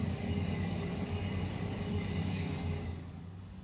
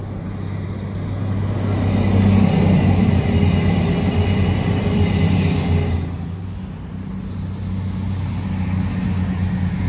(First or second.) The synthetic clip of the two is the first